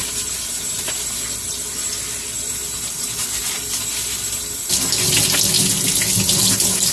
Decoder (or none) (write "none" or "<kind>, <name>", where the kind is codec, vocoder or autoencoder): none